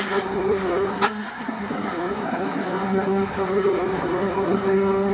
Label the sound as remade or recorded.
remade